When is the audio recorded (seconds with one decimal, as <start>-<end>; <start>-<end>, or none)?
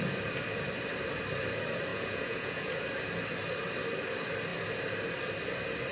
0.0-1.9; 2.7-5.9